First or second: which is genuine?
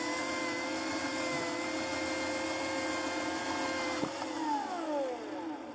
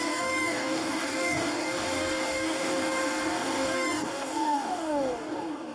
first